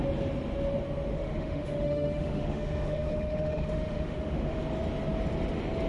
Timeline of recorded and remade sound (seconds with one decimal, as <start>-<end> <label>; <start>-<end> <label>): 0.0-1.1 recorded; 1.1-4.6 remade; 4.6-5.9 recorded